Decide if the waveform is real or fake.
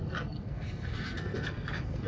fake